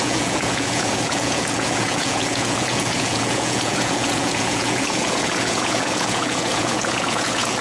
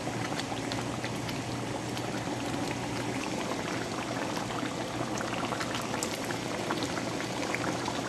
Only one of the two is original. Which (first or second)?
second